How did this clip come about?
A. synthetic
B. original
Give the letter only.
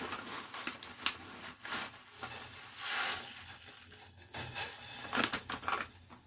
B